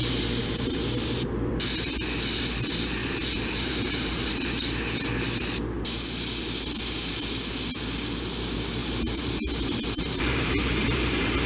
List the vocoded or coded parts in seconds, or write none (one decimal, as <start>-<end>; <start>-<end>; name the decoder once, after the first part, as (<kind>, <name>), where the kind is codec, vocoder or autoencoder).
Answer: 0.4-1.5 (vocoder, BigVGAN v2); 3.0-4.3; 8.8-11.5